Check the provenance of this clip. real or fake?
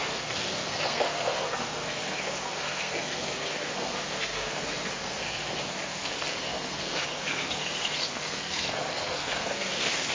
fake